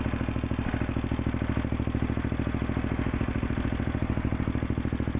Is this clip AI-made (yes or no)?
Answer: no